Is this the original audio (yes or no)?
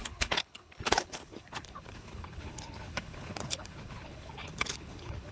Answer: no